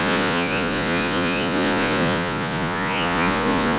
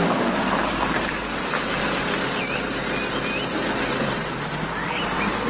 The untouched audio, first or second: second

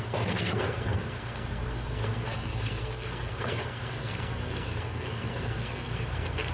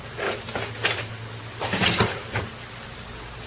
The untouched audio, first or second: second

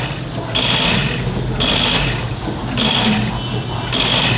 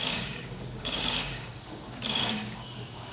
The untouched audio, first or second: first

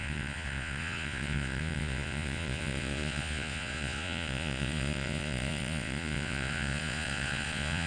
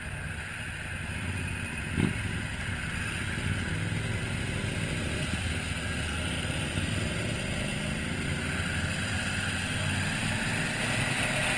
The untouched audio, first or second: second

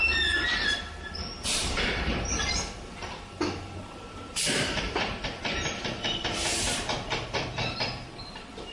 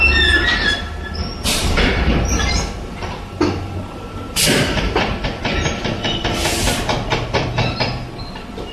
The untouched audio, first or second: second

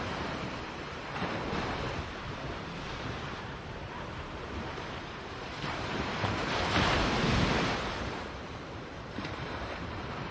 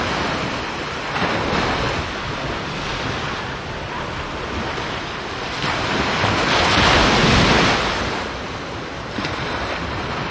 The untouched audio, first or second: second